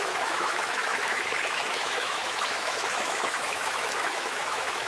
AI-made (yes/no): yes